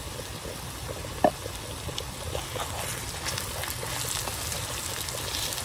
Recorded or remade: recorded